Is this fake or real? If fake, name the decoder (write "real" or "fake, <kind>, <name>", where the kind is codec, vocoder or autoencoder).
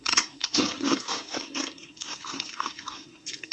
fake, codec, SNAC